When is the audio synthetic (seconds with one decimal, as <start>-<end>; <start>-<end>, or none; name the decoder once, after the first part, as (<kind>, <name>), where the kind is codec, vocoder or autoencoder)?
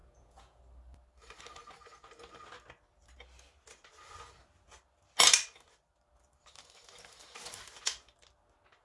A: 0.0-0.6 (vocoder, Vocos)